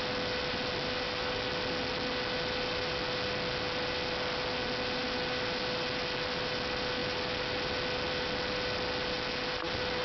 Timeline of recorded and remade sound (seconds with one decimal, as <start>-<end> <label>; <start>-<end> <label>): 0.0-10.0 recorded